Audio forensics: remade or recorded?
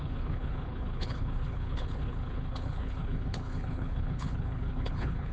remade